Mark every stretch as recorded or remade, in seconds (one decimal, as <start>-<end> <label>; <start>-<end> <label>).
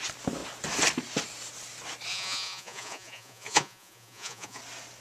0.0-2.1 recorded; 2.1-4.6 remade; 4.6-5.0 recorded